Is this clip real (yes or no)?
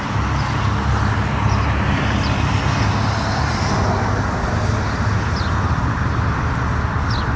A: yes